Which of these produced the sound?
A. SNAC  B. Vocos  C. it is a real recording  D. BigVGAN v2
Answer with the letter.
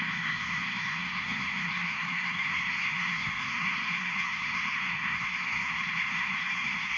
A